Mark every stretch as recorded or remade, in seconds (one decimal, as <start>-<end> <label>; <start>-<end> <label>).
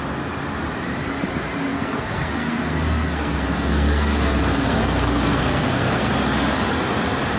0.0-1.7 recorded; 1.7-6.1 remade; 6.1-7.4 recorded